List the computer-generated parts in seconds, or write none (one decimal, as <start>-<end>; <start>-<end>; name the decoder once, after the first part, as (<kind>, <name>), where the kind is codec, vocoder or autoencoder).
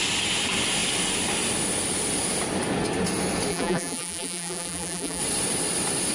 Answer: 3.5-5.2 (vocoder, BigVGAN v2)